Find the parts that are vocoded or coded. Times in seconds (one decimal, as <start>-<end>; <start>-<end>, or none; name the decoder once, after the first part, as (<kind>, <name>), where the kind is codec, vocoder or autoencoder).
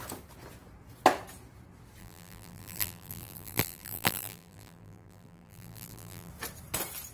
2.0-6.3 (vocoder, BigVGAN v2)